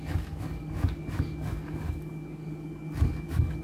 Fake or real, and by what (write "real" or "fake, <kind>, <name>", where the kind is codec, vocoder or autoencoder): fake, codec, DAC